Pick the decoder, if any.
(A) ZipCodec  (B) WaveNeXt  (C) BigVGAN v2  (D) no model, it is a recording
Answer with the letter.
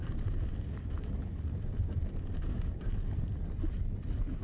D